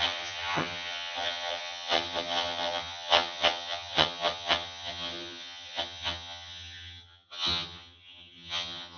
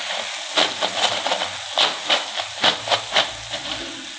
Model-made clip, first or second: first